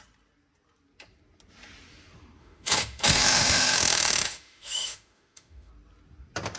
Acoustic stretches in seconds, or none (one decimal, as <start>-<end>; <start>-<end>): 0.0-2.4; 5.7-6.6